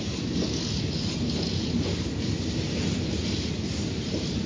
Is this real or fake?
real